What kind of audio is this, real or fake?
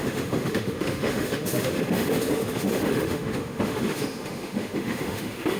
fake